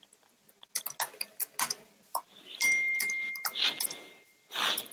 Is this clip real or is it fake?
real